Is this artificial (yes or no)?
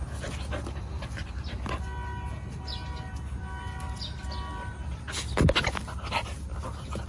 no